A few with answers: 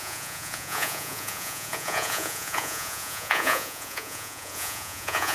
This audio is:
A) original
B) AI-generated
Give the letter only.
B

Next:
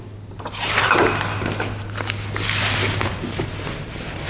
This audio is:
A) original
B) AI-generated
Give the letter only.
A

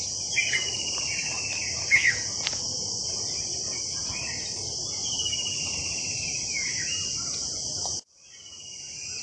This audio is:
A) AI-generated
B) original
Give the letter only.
A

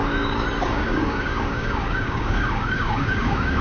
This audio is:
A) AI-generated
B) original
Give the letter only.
A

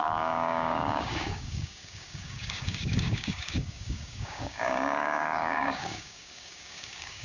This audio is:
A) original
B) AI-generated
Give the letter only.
B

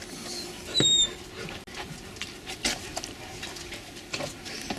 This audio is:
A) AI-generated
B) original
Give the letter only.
B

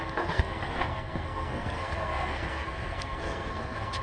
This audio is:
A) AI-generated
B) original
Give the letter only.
A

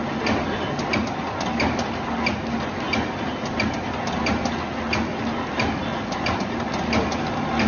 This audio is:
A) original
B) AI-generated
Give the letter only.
A